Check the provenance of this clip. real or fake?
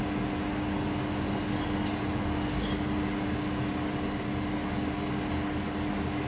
real